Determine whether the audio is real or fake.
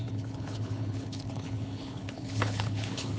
fake